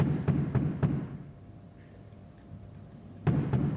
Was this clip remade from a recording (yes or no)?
yes